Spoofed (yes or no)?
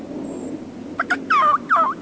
no